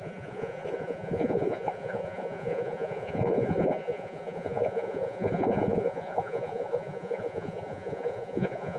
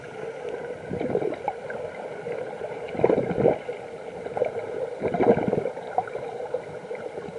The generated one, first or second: first